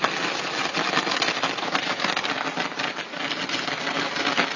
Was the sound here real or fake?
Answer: real